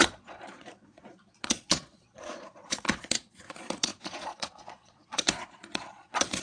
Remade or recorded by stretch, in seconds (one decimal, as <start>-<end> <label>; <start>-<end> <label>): 0.0-6.4 remade